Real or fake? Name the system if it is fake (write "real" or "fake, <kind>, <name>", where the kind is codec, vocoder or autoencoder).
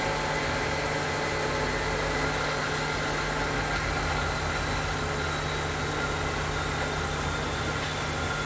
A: real